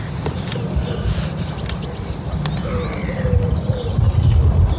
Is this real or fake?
real